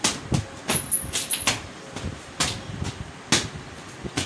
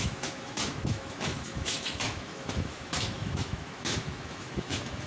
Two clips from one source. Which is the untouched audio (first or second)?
first